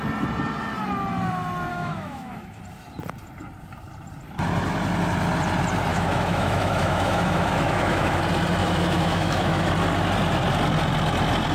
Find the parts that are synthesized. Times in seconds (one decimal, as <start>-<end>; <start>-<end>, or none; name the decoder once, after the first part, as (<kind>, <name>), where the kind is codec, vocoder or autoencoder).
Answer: 1.7-2.6 (autoencoder, DAC-VAE); 5.9-8.2; 8.6-9.7